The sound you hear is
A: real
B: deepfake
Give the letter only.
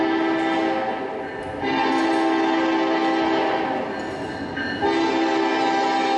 A